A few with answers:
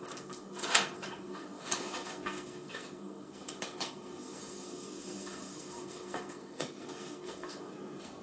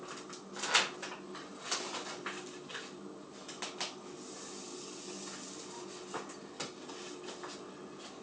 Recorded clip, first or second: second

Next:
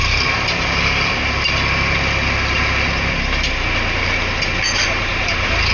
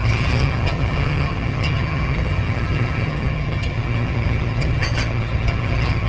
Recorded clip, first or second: first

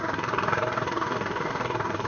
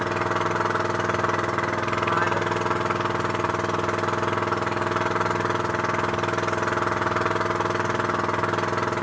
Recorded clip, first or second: second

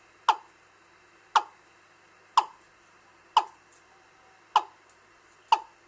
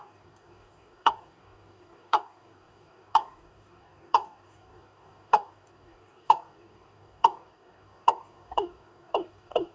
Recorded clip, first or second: first